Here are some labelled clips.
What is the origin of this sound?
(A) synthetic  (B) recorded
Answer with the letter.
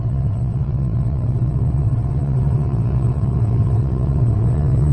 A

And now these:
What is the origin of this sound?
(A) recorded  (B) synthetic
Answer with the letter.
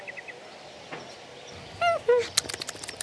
A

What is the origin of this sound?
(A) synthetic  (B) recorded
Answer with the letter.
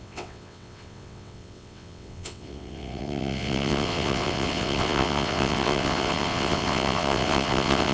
A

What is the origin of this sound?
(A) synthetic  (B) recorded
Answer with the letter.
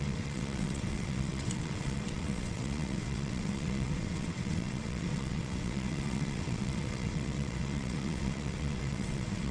A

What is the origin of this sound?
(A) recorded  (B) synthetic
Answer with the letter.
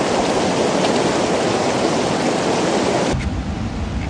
A